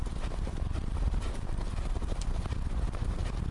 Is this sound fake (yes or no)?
yes